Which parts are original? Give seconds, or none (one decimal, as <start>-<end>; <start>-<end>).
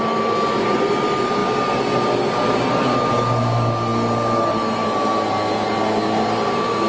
0.0-6.9